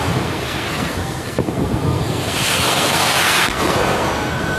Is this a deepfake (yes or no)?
yes